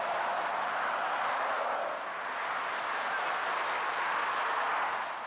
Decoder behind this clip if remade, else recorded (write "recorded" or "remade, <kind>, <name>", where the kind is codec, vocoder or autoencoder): recorded